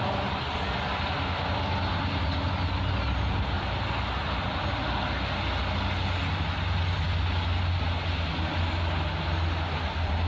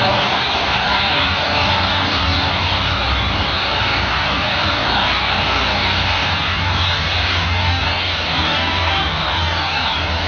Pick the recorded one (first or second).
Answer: first